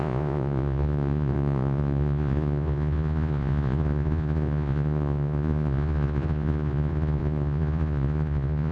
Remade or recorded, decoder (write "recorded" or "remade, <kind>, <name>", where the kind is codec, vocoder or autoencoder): remade, vocoder, Vocos